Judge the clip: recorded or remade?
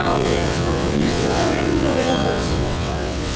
remade